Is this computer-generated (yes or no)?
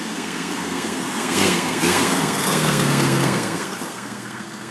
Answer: yes